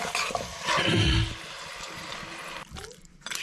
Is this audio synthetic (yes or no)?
yes